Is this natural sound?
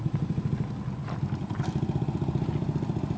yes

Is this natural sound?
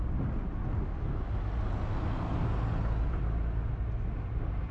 yes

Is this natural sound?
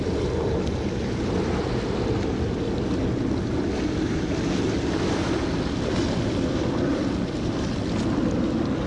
yes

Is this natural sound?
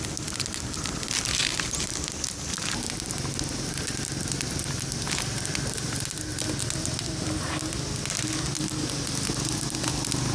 yes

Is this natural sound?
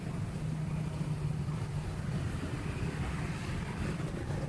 yes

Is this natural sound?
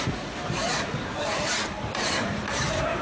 no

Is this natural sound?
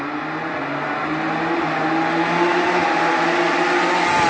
yes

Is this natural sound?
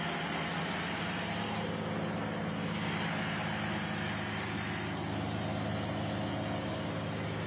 yes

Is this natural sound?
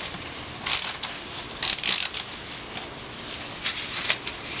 yes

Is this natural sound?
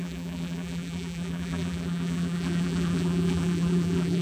no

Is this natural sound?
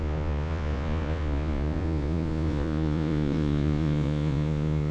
no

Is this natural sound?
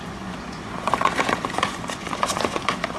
no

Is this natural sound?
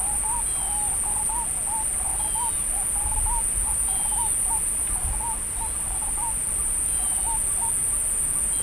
yes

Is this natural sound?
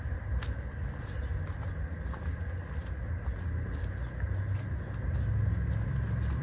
yes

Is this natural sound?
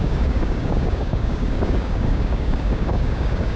no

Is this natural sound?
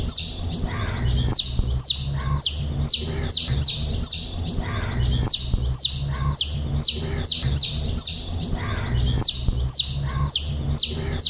yes